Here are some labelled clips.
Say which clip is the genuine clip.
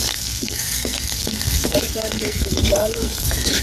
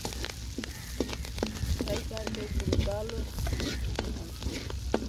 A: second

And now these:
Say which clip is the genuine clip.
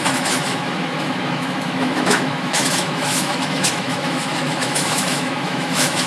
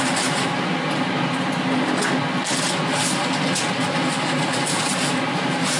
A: second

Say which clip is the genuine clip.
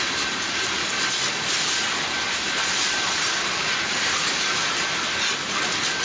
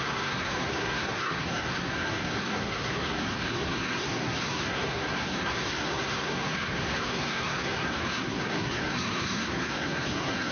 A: first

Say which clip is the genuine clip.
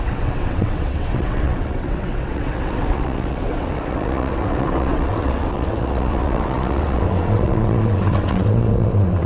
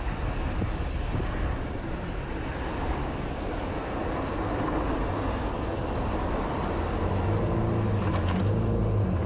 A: second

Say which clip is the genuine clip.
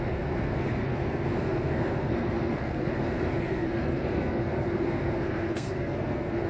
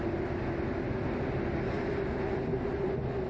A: second